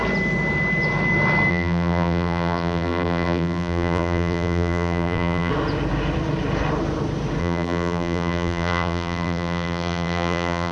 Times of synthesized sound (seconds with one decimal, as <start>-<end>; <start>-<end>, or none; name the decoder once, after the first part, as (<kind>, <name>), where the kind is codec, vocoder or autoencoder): 1.5-5.5 (vocoder, BigVGAN v2); 7.4-10.7

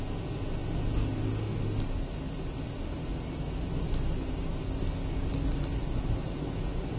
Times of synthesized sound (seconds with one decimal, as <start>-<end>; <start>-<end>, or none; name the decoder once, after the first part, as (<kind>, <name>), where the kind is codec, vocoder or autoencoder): none

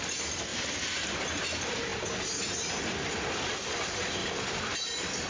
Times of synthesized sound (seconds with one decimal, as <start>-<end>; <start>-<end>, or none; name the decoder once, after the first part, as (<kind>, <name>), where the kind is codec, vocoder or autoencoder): 0.5-1.0 (vocoder, BigVGAN v2); 4.2-5.3